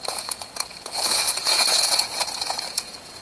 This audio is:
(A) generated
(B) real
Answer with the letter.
A